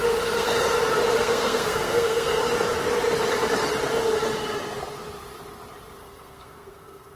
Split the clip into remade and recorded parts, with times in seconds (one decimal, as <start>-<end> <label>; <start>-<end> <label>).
0.0-0.5 remade; 0.5-1.2 recorded; 1.2-2.4 remade; 2.4-6.0 recorded; 6.0-7.2 remade